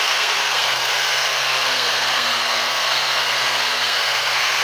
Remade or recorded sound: remade